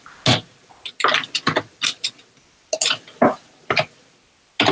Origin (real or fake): real